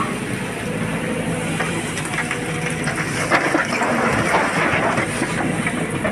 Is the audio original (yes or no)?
yes